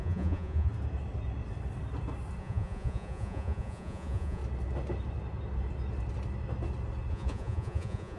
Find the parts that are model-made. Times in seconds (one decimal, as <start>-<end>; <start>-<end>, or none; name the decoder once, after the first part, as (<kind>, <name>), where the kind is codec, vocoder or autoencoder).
0.0-0.7 (vocoder, Vocos); 2.4-4.4; 7.1-8.2